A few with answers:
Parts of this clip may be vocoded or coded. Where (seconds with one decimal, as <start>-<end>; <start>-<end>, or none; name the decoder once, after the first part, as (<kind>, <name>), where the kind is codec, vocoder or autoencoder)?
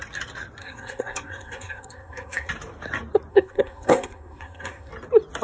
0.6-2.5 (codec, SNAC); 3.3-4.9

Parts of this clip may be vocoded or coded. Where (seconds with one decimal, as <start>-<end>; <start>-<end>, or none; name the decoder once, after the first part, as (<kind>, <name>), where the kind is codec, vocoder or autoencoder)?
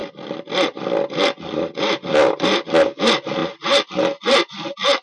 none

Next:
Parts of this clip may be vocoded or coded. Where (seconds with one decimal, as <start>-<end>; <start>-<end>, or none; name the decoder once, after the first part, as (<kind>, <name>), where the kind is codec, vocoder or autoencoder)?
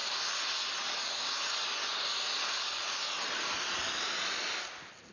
none